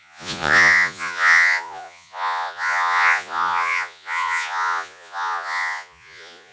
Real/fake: fake